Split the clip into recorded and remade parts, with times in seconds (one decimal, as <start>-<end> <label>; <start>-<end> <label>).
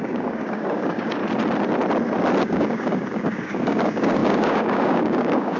0.0-1.2 remade; 1.2-2.4 recorded; 2.4-5.6 remade